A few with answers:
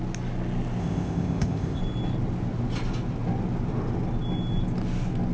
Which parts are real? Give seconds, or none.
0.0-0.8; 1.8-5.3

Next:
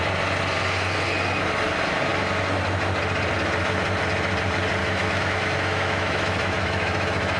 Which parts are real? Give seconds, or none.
0.0-4.8

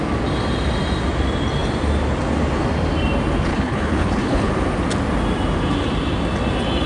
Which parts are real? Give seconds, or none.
0.0-3.5; 4.5-6.9

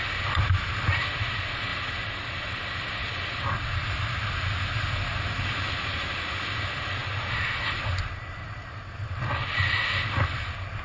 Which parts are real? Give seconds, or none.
0.0-10.8

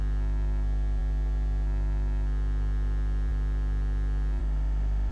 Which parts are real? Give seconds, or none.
0.0-4.4

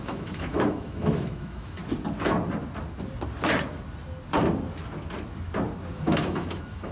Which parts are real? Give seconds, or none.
1.8-5.9

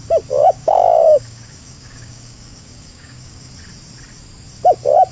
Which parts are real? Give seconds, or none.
0.0-0.4; 3.5-5.1